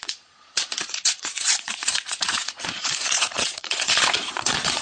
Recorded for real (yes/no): no